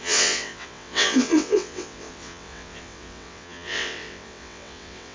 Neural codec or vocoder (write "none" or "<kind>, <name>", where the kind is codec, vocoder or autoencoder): vocoder, WaveNeXt